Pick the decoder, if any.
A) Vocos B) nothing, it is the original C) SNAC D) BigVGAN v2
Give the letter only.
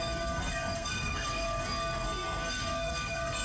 C